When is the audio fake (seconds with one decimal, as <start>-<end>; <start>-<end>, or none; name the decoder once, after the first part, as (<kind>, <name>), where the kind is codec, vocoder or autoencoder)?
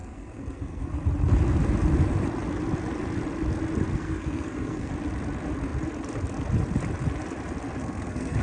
0.0-0.9 (codec, SNAC); 3.9-4.9; 7.8-8.4